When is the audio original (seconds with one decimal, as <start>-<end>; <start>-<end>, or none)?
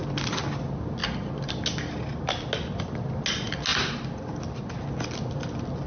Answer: 0.0-5.9